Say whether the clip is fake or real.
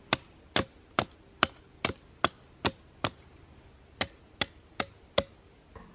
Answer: real